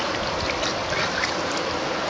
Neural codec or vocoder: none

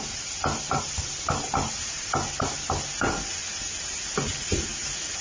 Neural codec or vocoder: none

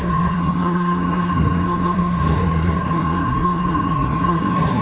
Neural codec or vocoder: codec, SNAC